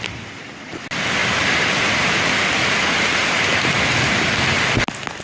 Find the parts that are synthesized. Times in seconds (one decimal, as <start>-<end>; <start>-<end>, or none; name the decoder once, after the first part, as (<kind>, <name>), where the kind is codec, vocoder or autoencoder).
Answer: none

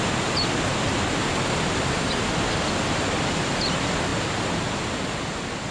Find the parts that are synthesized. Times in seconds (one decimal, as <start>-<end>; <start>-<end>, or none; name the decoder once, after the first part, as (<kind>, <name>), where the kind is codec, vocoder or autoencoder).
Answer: none

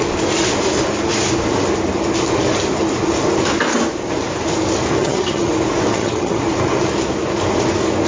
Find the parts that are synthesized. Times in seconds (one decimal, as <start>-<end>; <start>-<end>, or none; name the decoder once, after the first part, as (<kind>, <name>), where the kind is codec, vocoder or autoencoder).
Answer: 5.0-5.5 (vocoder, HiFi-GAN); 5.9-6.4

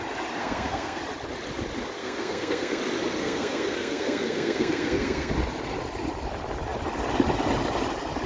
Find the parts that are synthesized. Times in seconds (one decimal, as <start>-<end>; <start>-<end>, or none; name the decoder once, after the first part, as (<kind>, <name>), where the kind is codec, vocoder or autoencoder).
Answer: 0.4-1.0 (codec, SNAC); 2.0-2.8; 3.2-5.3